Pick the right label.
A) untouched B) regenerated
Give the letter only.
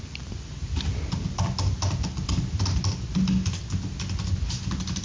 A